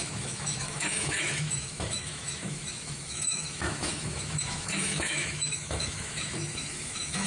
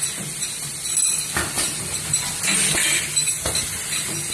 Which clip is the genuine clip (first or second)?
second